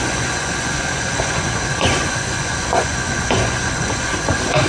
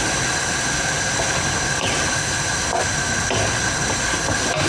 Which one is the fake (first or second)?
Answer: first